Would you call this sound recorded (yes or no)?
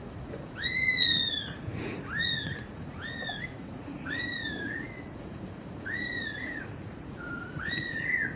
no